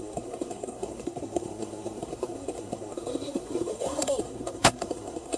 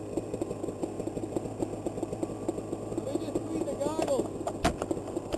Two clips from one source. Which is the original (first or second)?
second